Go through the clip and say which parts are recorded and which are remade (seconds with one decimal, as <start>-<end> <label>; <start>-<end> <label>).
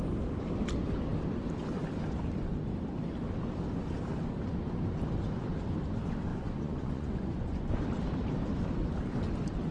0.0-6.3 recorded; 6.3-7.9 remade; 7.9-9.7 recorded